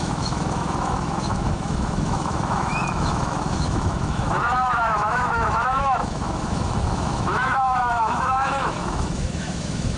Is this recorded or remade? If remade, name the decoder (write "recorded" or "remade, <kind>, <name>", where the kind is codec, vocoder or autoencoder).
remade, autoencoder, DAC-VAE